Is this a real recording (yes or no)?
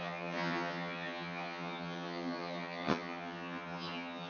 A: no